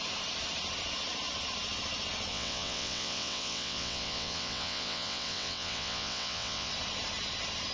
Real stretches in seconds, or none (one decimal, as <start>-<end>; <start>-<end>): 0.0-2.3; 6.7-7.7